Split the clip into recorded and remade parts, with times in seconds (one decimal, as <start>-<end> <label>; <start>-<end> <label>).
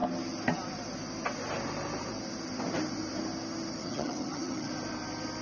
0.0-3.8 recorded; 3.8-4.7 remade; 4.7-5.4 recorded